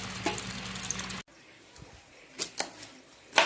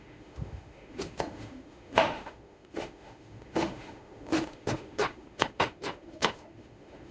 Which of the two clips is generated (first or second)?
second